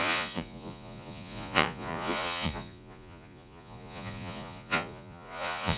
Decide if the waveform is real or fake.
fake